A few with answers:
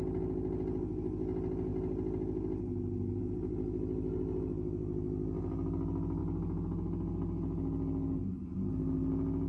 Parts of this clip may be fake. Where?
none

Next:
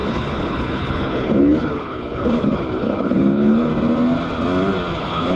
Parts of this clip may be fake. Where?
0.0-3.7 (codec, HILCodec); 5.0-5.4

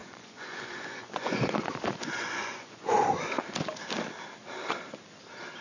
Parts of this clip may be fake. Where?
0.0-3.4 (vocoder, Vocos)

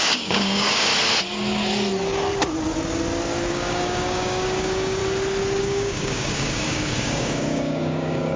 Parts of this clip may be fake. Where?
0.0-0.9 (codec, DAC); 3.5-5.0; 5.6-8.4